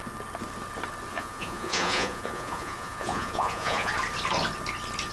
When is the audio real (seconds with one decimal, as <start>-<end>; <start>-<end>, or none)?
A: 0.0-1.1; 3.9-5.1

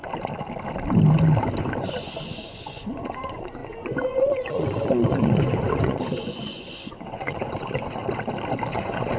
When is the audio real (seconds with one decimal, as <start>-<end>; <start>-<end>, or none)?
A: 0.0-1.8; 8.0-8.7

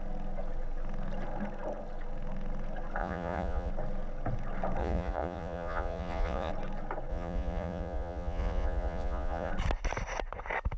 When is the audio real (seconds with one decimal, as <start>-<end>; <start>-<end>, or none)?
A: 0.0-3.0; 3.7-4.8; 6.5-7.1; 9.5-10.8

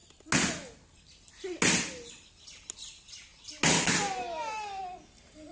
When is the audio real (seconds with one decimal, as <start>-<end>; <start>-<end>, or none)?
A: 0.0-5.5

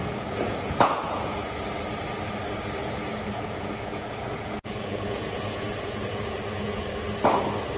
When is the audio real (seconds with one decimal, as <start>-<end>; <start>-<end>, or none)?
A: 1.4-2.8; 6.8-7.8

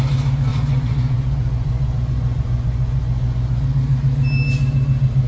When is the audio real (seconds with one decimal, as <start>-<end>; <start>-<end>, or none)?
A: 0.0-0.5; 3.6-5.3

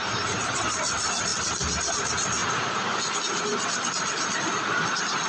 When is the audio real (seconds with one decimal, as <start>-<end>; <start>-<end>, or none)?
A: 0.0-5.3